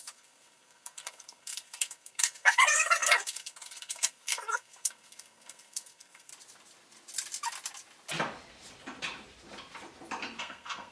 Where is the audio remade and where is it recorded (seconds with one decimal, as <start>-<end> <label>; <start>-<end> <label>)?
0.0-6.3 remade; 6.3-10.4 recorded; 10.4-10.9 remade